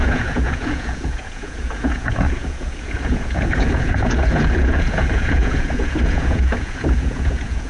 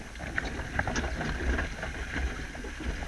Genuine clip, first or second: second